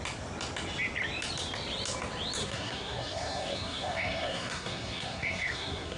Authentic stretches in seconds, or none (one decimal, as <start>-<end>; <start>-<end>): 0.0-2.4